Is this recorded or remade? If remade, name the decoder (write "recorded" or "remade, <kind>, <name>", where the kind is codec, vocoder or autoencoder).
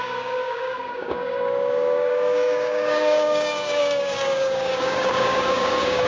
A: remade, codec, DAC